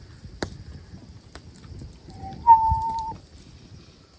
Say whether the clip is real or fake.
real